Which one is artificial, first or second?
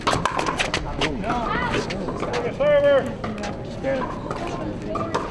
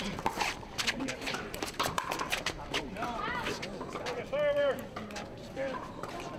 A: second